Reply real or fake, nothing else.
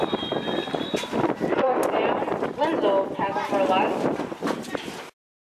real